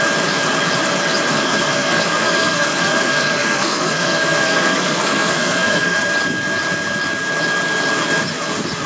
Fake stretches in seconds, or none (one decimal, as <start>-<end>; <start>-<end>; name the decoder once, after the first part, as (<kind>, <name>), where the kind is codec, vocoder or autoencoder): 1.3-6.0 (codec, SNAC)